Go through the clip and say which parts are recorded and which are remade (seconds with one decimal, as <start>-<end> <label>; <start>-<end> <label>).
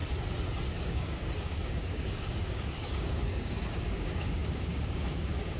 0.0-0.7 recorded; 0.7-5.6 remade